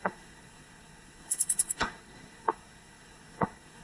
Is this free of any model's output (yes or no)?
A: no